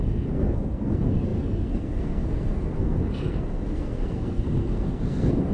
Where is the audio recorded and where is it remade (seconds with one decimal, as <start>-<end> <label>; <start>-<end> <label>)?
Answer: 0.0-5.5 remade